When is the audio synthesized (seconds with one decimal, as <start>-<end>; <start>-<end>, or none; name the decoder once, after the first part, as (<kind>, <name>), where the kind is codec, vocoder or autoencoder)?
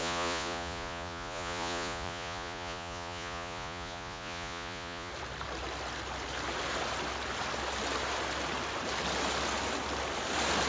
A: 0.0-5.1 (vocoder, Vocos)